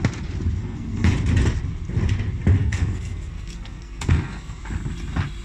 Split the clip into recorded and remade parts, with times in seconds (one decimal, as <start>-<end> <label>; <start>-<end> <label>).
0.0-0.6 recorded; 0.6-1.1 remade; 1.1-2.6 recorded; 2.6-4.6 remade; 4.6-5.4 recorded